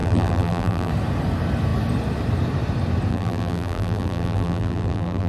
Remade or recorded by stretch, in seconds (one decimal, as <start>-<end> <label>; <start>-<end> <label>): 0.0-0.9 remade; 0.9-3.1 recorded; 3.1-5.3 remade